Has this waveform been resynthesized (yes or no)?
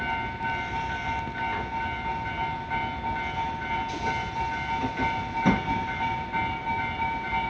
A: no